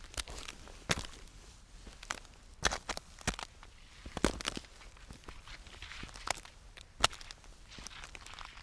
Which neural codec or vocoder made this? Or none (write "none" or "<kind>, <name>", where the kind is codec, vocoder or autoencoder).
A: none